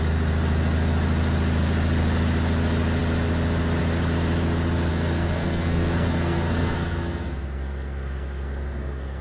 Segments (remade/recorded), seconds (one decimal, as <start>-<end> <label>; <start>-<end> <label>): 0.0-4.9 recorded; 4.9-9.2 remade